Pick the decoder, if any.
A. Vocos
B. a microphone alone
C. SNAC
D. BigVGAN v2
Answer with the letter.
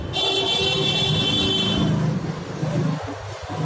B